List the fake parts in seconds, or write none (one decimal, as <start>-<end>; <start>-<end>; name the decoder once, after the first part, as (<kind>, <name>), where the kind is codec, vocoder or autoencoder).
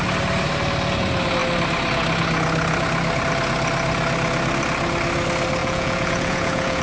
5.6-6.8 (vocoder, Vocos)